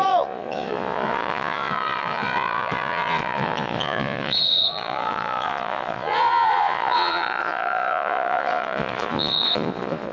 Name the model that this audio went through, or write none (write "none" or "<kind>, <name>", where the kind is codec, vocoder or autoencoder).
vocoder, Vocos